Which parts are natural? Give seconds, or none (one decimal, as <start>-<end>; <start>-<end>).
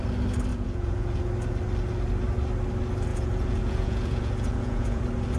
0.0-0.5; 1.2-3.1; 5.0-5.4